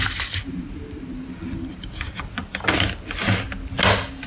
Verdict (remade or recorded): recorded